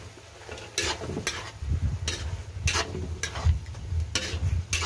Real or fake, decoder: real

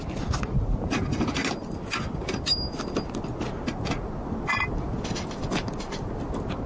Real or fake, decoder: real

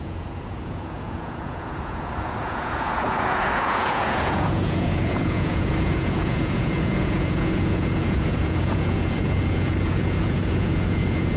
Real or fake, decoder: fake, vocoder, Vocos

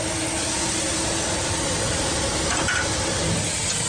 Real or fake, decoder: real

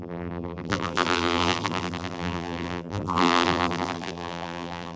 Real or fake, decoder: fake, vocoder, BigVGAN v2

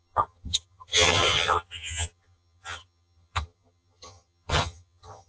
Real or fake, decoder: fake, vocoder, HiFi-GAN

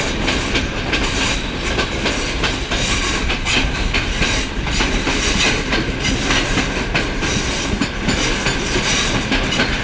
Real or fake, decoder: real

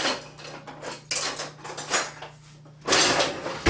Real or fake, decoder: real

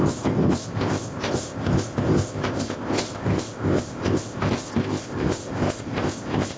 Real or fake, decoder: fake, codec, ZipCodec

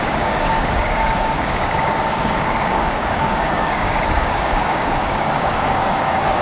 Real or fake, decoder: fake, codec, DAC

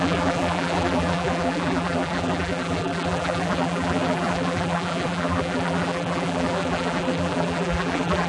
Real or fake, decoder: fake, vocoder, BigVGAN v2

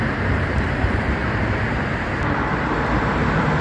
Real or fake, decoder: fake, vocoder, BigVGAN v2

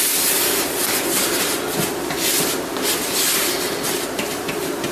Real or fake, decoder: real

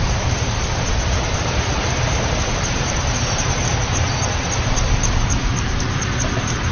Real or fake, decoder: fake, vocoder, BigVGAN v2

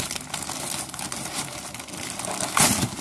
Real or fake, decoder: real